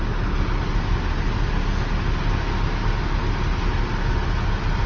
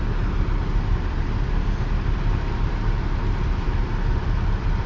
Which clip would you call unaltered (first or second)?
first